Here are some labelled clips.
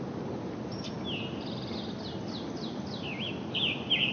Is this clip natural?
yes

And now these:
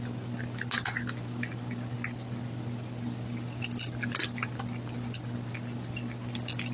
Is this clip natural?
yes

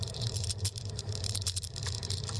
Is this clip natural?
no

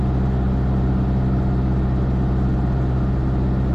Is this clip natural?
yes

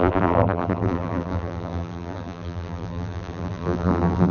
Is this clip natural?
no